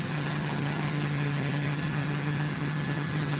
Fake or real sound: fake